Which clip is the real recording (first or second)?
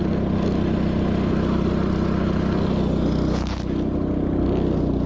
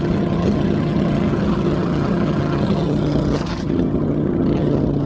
first